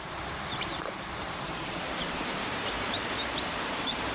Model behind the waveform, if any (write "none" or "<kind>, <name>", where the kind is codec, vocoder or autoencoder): vocoder, BigVGAN v2